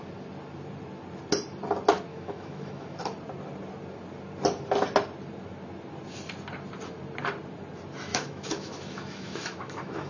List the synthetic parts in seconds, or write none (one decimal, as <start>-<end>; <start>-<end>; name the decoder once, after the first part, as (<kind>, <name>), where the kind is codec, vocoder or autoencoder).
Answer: 2.1-3.0 (autoencoder, DAC-VAE); 8.1-10.1